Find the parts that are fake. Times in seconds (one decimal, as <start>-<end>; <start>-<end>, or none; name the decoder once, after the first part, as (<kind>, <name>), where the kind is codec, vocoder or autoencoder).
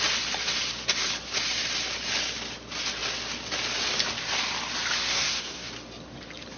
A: 5.0-5.7 (codec, SNAC)